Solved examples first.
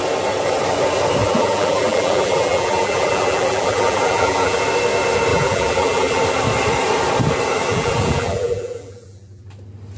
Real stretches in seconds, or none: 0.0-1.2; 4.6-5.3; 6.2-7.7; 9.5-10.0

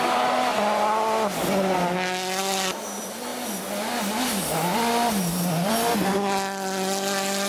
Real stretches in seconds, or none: 0.0-7.5

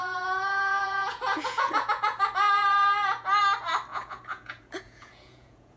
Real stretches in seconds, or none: 3.4-3.9

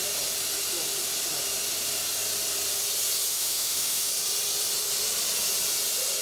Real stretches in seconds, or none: 0.0-3.3; 4.1-6.2

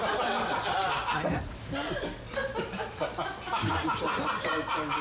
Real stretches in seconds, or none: 0.0-5.0

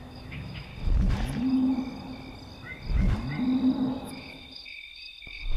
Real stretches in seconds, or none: 0.7-4.1

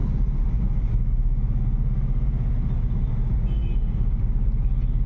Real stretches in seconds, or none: 0.0-5.1